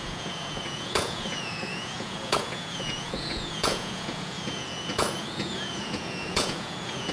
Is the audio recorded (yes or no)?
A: no